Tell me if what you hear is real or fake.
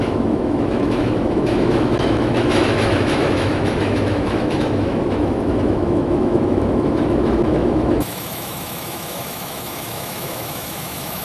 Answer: fake